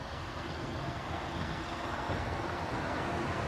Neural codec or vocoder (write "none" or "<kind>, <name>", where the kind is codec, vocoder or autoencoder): codec, SNAC